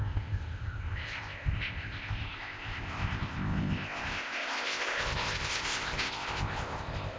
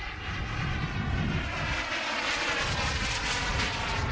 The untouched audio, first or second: second